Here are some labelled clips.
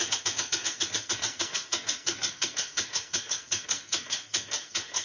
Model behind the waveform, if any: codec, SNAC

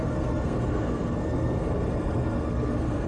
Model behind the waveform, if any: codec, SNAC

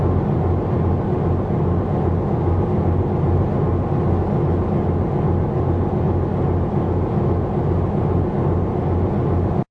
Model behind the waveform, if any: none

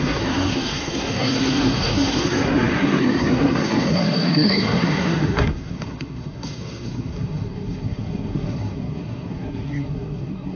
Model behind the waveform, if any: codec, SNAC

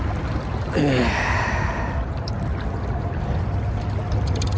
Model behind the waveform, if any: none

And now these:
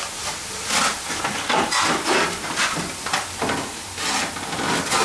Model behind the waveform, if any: none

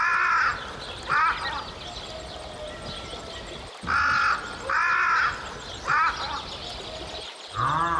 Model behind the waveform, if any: none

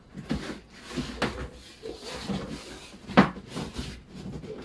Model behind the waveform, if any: none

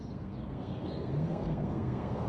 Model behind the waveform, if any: codec, SNAC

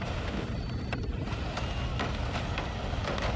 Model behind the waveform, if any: none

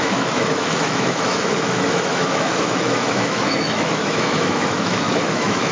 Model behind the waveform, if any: autoencoder, DAC-VAE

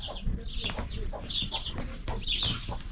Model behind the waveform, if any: none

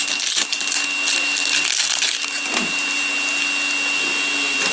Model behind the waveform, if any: none